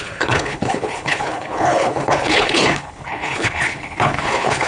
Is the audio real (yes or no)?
no